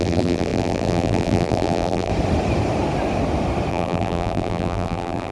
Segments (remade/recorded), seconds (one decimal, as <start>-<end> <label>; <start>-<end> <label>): 0.0-2.1 remade; 2.1-3.7 recorded; 3.7-5.3 remade